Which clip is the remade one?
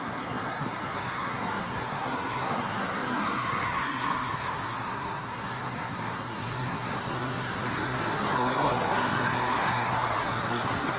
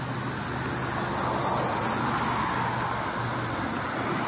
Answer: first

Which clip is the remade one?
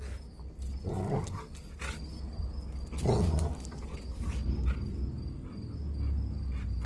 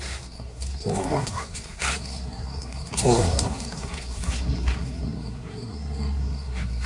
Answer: second